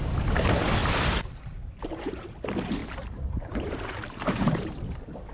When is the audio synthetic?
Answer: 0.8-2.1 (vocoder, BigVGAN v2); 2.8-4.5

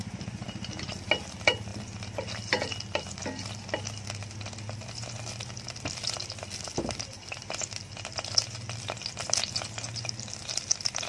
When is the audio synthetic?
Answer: none

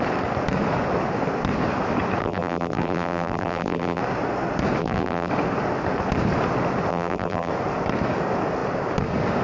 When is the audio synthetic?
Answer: 2.2-4.0 (vocoder, BigVGAN v2); 4.8-5.3; 6.9-7.5

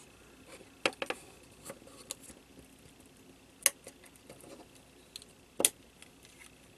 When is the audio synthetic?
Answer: none

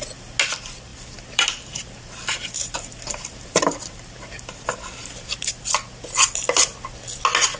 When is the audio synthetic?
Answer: 0.9-5.5 (vocoder, BigVGAN v2)